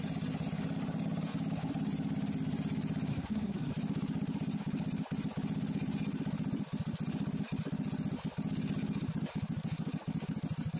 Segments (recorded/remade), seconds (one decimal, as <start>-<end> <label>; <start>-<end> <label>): 0.0-3.1 recorded; 3.1-3.7 remade; 3.7-10.8 recorded